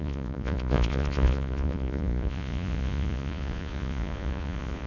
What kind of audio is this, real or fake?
fake